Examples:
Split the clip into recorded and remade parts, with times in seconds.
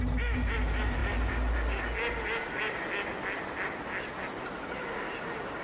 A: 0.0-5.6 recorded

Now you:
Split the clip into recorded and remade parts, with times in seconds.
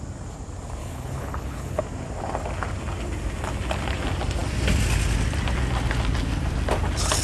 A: 0.0-0.8 recorded; 0.8-1.8 remade; 1.8-7.2 recorded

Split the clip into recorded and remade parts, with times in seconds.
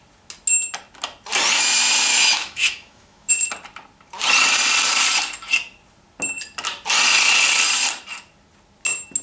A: 0.0-2.1 recorded; 2.1-3.3 remade; 3.3-9.2 recorded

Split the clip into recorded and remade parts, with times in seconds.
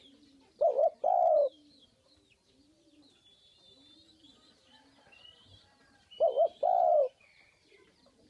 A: 0.0-8.3 remade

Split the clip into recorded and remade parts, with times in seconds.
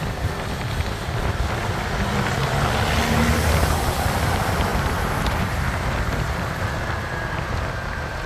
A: 0.0-8.3 recorded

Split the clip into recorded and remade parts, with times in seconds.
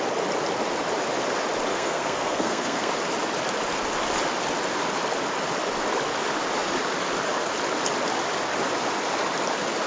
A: 0.0-1.7 recorded; 1.7-2.9 remade; 2.9-9.9 recorded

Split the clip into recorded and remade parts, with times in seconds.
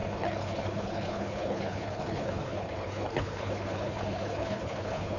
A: 0.0-5.2 remade